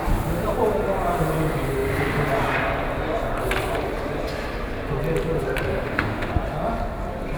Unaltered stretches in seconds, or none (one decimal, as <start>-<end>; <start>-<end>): 0.0-5.7; 6.3-7.4